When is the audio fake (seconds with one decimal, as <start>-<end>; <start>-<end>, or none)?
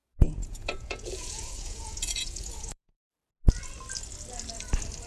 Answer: 0.0-3.1